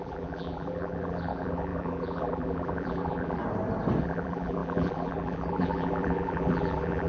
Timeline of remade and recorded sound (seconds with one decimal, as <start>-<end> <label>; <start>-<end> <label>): 0.0-3.4 remade; 3.4-4.0 recorded; 4.0-7.1 remade